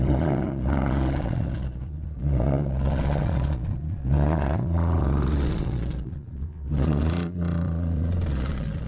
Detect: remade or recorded remade